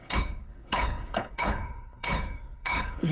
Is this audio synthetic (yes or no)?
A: yes